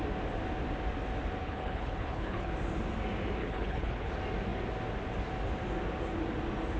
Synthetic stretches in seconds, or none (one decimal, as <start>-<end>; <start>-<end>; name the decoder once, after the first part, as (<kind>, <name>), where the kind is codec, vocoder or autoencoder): 1.4-2.5 (codec, HILCodec); 3.4-4.1